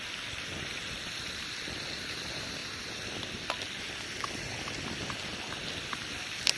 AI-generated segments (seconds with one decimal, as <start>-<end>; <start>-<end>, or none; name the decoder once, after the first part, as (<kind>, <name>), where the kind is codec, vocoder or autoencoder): 0.0-5.3 (vocoder, BigVGAN v2)